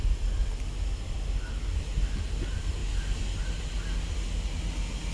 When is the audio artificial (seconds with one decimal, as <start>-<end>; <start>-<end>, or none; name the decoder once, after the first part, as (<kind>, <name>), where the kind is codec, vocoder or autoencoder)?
none